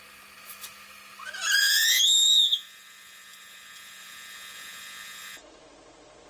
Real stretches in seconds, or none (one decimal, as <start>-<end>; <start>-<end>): 0.0-1.6; 5.4-6.3